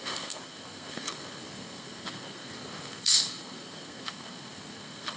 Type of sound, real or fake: fake